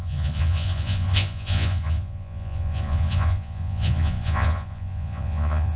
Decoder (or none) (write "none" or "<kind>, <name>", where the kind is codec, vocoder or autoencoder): vocoder, Vocos